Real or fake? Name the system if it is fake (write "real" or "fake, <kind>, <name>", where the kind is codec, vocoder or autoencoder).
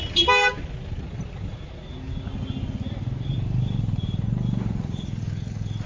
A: real